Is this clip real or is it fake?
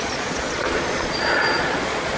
fake